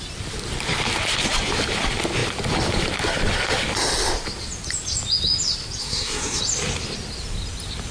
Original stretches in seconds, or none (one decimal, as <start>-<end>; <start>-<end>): 0.0-5.8; 6.4-7.9